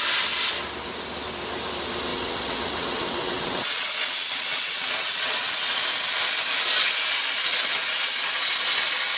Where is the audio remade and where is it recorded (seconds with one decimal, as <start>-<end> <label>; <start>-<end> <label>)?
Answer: 0.0-2.1 recorded; 2.1-5.6 remade; 5.6-9.2 recorded

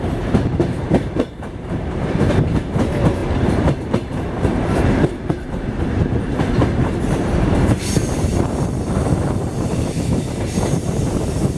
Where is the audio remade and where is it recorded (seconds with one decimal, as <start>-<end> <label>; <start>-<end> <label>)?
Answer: 0.0-11.6 remade

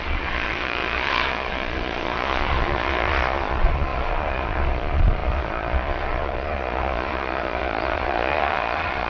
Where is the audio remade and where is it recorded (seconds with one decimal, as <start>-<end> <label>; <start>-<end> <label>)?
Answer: 0.0-9.1 remade